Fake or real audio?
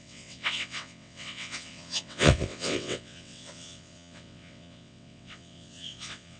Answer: fake